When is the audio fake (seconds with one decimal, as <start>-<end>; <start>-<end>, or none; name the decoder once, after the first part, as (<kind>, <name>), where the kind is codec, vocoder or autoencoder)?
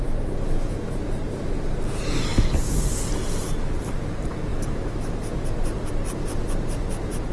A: none